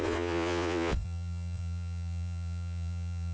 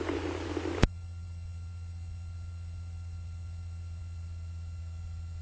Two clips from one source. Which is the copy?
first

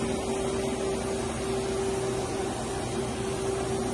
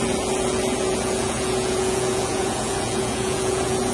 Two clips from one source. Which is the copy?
second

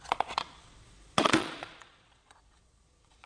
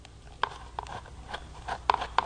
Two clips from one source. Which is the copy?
first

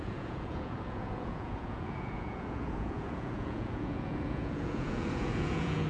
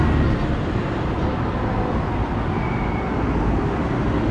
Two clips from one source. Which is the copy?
first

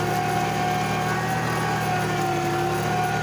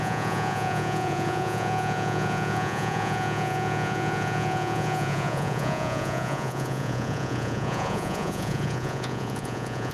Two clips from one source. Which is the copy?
second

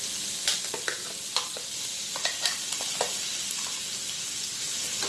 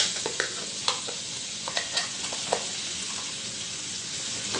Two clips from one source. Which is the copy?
second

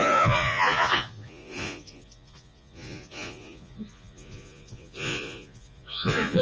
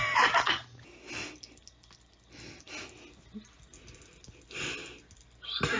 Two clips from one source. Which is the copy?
first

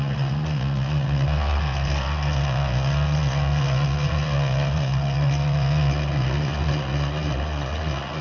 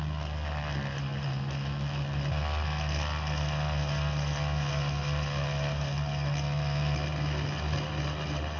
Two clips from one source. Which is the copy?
first